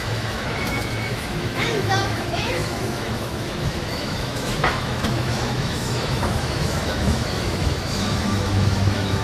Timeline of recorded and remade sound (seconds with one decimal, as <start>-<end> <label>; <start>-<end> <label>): 0.0-9.2 remade